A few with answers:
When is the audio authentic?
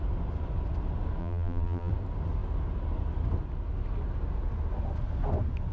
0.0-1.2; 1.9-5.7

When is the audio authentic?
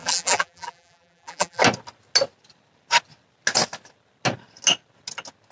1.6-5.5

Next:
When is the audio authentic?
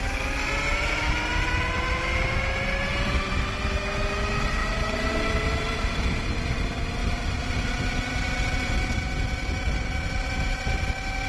0.0-2.9; 3.5-4.6; 6.0-7.0; 7.8-11.3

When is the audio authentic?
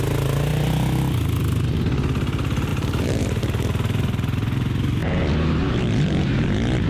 0.0-2.7; 3.4-6.9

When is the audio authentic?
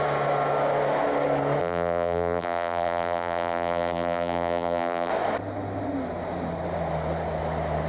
0.0-1.6; 5.1-7.9